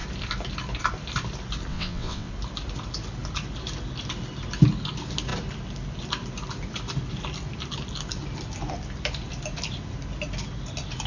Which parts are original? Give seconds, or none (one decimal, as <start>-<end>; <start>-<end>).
0.0-1.7; 2.3-11.1